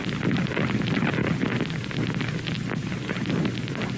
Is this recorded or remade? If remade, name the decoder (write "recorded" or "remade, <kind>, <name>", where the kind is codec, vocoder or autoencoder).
recorded